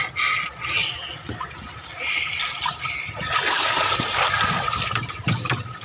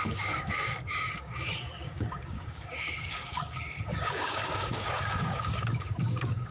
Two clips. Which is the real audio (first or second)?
first